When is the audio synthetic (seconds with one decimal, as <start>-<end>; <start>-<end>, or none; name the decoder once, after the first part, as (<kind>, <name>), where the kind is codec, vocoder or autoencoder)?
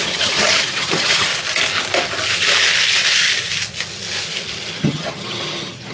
0.0-1.3 (vocoder, HiFi-GAN); 4.8-5.9